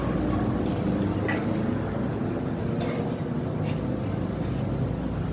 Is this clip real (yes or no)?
yes